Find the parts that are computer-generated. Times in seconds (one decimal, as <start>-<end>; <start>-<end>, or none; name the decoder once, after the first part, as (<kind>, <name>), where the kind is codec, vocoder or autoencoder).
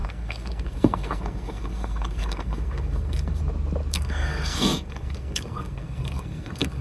0.0-3.4 (codec, SNAC); 3.9-6.8